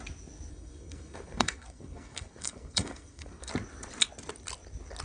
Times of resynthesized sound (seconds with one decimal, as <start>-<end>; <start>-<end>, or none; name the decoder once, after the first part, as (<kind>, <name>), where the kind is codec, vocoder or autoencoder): 0.5-3.5 (codec, SNAC)

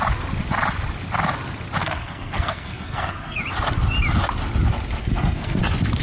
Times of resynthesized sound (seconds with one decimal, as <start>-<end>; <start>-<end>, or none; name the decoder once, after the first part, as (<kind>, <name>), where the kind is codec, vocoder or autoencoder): 1.8-3.4 (codec, SNAC); 5.0-5.6

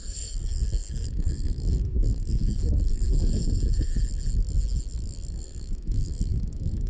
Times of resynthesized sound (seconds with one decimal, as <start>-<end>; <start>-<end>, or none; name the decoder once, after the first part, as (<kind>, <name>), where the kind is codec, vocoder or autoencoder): 0.0-3.9 (codec, SNAC); 5.3-6.9